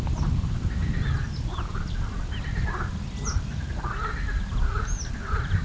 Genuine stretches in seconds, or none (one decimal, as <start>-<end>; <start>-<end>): 0.0-0.8; 3.7-5.6